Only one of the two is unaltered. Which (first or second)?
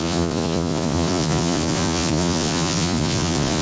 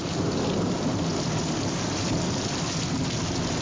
second